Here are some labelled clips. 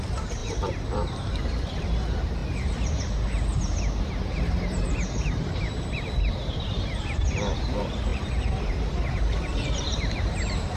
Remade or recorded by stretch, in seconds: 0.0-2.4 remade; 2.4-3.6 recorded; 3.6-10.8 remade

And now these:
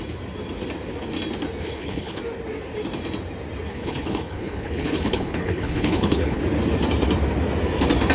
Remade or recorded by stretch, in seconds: 0.0-1.6 recorded; 1.6-2.2 remade; 2.2-3.7 recorded; 3.7-6.4 remade; 6.4-8.1 recorded

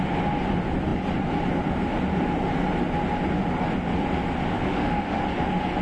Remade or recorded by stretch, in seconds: 0.0-4.5 recorded; 4.5-5.2 remade; 5.2-5.8 recorded

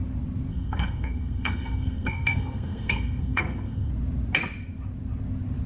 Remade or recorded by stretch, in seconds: 0.0-0.5 recorded; 0.5-3.9 remade; 3.9-5.7 recorded

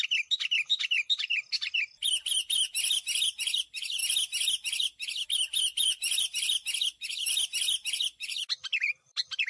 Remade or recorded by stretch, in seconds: 0.0-0.7 recorded; 0.7-1.3 remade; 1.3-4.0 recorded; 4.0-7.3 remade; 7.3-8.7 recorded; 8.7-9.5 remade